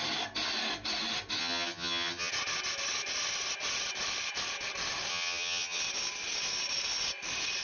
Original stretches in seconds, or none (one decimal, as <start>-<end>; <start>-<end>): 0.0-1.4; 2.3-5.1; 5.8-7.6